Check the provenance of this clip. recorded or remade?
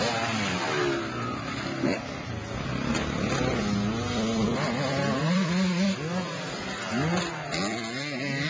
recorded